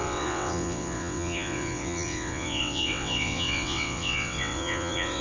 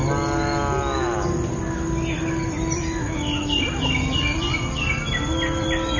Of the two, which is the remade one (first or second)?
first